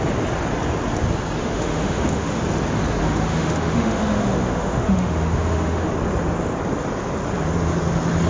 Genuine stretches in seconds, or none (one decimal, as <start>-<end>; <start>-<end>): 0.0-1.4; 2.4-3.0; 5.9-8.3